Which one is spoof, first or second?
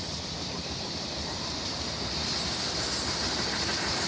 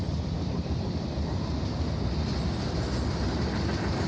first